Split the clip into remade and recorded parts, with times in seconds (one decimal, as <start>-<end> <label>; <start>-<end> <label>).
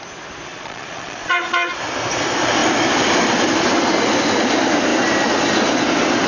0.0-0.5 recorded; 0.5-1.7 remade; 1.7-6.3 recorded